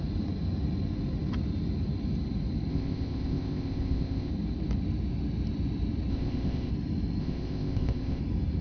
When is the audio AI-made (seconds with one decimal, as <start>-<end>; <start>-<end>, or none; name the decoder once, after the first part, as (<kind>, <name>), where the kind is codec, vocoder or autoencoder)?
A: 2.7-4.3 (codec, ZipCodec); 6.1-6.7; 7.2-8.2